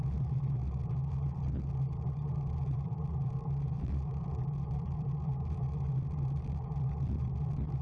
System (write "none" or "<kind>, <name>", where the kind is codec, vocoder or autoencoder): vocoder, BigVGAN v2